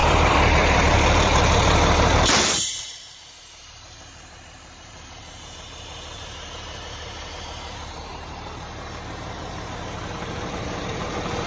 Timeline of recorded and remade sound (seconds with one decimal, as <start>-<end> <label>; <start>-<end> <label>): 0.0-11.5 remade